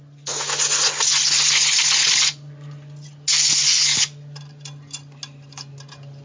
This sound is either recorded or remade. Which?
recorded